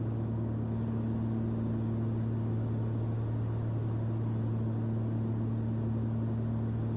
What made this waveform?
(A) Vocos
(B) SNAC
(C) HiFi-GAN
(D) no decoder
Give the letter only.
D